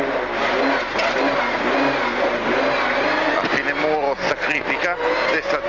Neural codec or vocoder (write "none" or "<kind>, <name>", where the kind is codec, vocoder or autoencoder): none